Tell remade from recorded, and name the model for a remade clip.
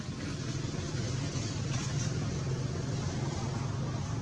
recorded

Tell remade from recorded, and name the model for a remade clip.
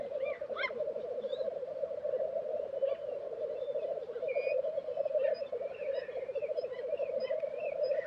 remade, vocoder, BigVGAN v2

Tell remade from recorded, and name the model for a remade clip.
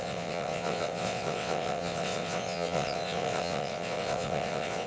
remade, vocoder, WaveNeXt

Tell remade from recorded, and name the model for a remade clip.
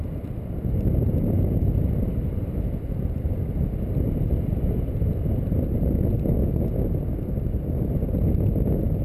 recorded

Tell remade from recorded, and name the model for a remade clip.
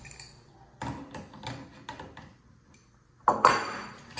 recorded